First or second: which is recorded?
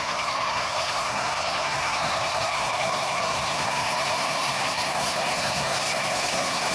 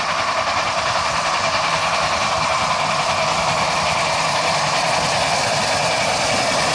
second